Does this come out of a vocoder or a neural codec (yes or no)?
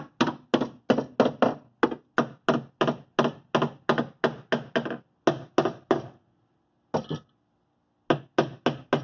no